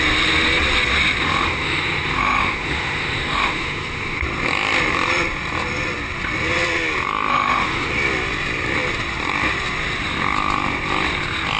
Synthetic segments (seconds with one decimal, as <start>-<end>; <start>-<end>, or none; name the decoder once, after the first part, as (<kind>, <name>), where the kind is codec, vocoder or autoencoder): 1.2-4.2 (autoencoder, DAC-VAE); 7.3-7.9